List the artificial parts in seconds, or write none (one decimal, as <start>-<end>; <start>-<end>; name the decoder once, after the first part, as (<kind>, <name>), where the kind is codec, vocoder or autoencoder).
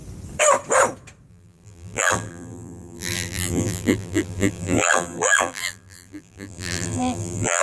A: 1.3-7.6 (vocoder, BigVGAN v2)